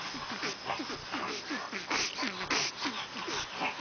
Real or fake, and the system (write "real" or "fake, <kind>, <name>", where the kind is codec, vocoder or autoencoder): real